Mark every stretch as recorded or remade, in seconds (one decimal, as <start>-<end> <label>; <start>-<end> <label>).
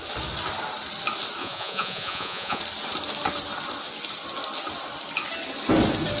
0.0-1.4 recorded; 1.4-2.6 remade; 2.6-6.2 recorded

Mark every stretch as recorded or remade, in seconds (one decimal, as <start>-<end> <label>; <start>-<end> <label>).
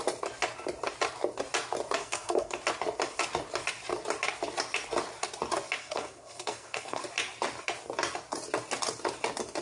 0.0-2.0 recorded; 2.0-2.6 remade; 2.6-5.8 recorded; 5.8-7.0 remade; 7.0-9.6 recorded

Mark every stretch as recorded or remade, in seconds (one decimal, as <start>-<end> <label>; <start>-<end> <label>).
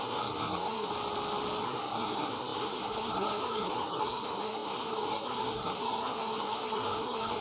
0.0-0.9 remade; 0.9-1.6 recorded; 1.6-7.4 remade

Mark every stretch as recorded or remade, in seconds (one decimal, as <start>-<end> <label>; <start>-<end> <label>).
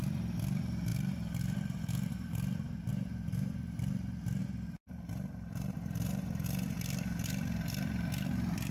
0.0-8.7 remade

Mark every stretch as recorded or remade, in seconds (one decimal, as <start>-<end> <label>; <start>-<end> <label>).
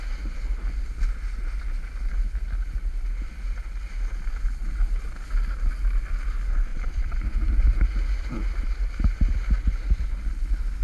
0.0-10.8 recorded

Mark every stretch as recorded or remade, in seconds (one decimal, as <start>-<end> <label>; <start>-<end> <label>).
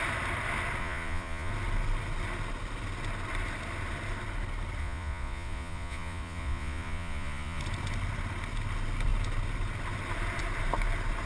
0.0-0.8 recorded; 0.8-1.5 remade; 1.5-4.8 recorded; 4.8-7.6 remade; 7.6-11.3 recorded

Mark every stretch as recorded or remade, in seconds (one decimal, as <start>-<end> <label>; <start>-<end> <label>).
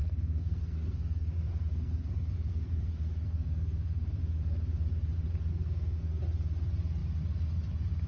0.0-4.2 remade; 4.2-5.5 recorded; 5.5-6.2 remade; 6.2-8.1 recorded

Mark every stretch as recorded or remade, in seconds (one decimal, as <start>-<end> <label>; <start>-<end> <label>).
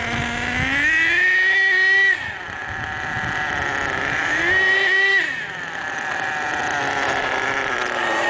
0.0-8.3 recorded